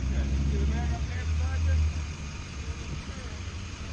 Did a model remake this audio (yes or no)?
no